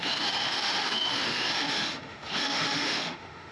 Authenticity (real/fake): fake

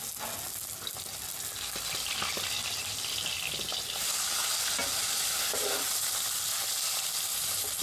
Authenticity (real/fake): real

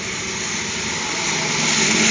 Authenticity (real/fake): real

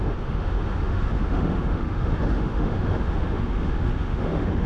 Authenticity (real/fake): fake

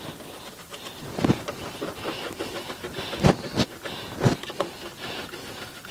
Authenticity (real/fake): real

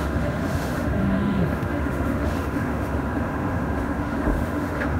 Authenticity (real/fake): fake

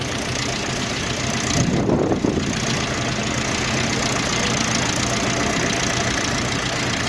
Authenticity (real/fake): real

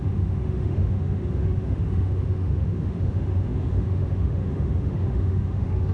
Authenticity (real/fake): fake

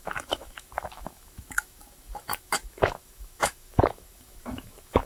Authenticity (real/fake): fake